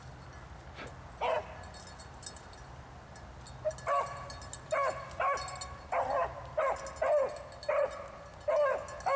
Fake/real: real